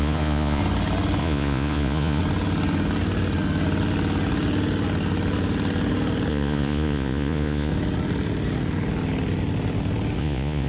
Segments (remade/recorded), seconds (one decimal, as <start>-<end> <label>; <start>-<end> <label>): 0.0-0.6 remade; 0.6-1.2 recorded; 1.2-2.2 remade; 2.2-6.3 recorded; 6.3-7.7 remade; 7.7-10.2 recorded; 10.2-10.7 remade